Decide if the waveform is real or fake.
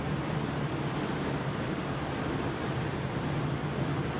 real